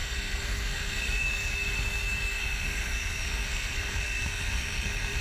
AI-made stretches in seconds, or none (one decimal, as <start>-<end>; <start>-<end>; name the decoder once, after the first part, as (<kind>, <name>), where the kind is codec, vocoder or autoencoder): 0.0-5.2 (codec, SNAC)